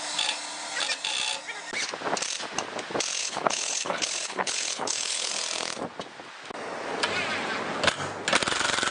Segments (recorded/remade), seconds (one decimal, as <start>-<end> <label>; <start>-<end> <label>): 0.0-3.2 recorded; 3.2-5.3 remade; 5.3-8.9 recorded